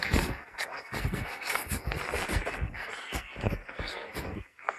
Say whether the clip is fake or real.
fake